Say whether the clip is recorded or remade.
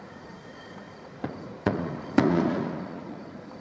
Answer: remade